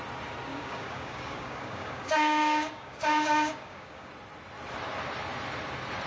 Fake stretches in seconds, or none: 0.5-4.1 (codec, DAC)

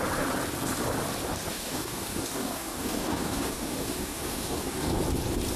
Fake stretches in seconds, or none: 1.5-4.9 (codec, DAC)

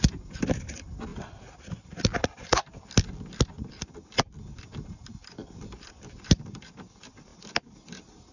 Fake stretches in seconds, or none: none